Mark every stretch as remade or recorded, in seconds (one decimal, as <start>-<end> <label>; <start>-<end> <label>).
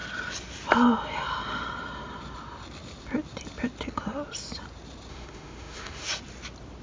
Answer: 0.0-5.1 recorded; 5.1-6.1 remade; 6.1-6.8 recorded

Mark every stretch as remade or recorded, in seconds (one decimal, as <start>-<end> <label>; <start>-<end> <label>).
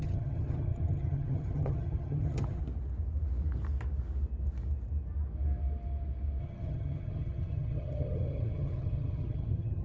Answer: 0.0-2.6 remade; 2.6-6.4 recorded; 6.4-9.8 remade